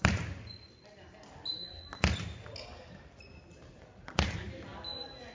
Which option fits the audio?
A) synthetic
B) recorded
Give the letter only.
B